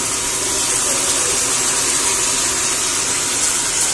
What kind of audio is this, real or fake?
real